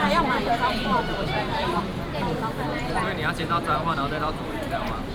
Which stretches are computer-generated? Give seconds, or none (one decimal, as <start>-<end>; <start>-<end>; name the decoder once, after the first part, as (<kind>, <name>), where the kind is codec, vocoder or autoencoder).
0.0-1.9 (vocoder, BigVGAN v2); 3.4-5.1